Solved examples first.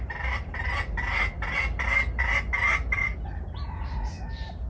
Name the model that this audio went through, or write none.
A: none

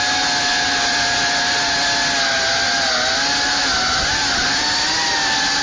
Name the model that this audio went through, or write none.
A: none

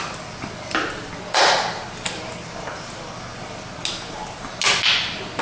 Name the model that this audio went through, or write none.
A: none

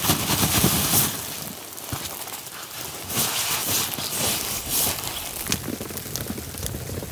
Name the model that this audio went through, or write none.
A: none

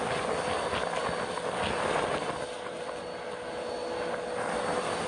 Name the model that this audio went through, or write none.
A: none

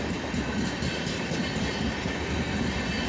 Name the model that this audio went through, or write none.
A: none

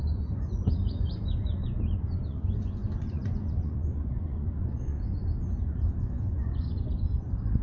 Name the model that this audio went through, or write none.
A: vocoder, Vocos